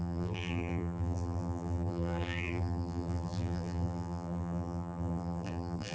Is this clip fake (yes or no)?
yes